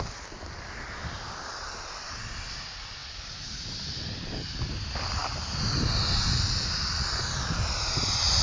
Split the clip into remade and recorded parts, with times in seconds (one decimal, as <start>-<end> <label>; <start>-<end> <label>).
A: 0.0-3.0 recorded; 3.0-4.2 remade; 4.2-8.4 recorded